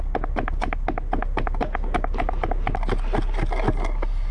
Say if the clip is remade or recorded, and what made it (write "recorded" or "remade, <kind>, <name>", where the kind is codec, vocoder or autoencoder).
recorded